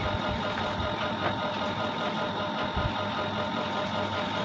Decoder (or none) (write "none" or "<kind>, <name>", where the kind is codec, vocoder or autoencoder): none